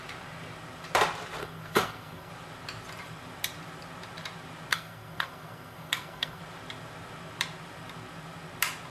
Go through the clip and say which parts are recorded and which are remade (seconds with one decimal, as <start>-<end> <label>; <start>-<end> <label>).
0.0-1.4 recorded; 1.4-2.3 remade; 2.3-4.7 recorded; 4.7-6.4 remade; 6.4-8.9 recorded

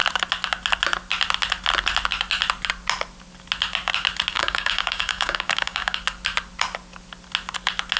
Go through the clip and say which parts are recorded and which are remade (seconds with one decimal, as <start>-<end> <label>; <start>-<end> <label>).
0.0-4.3 recorded; 4.3-6.0 remade; 6.0-8.0 recorded

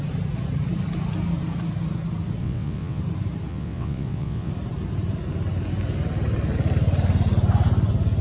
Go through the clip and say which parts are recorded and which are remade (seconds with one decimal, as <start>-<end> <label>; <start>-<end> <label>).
0.0-2.4 recorded; 2.4-3.0 remade; 3.0-3.5 recorded; 3.5-4.5 remade; 4.5-8.2 recorded

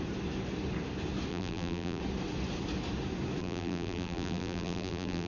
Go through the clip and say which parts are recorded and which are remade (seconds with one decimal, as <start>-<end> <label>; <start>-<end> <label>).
0.0-1.3 recorded; 1.3-2.0 remade; 2.0-3.4 recorded; 3.4-5.3 remade

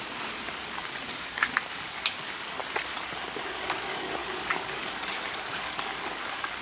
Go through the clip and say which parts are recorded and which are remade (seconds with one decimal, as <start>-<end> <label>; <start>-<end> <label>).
0.0-2.6 remade; 2.6-3.5 recorded; 3.5-6.6 remade

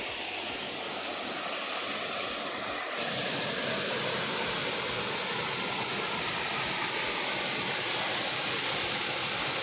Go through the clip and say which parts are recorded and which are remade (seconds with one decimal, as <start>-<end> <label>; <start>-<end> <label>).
0.0-9.6 recorded